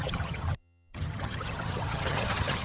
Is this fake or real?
fake